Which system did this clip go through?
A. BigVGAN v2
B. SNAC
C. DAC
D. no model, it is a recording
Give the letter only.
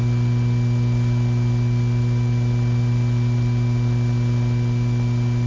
D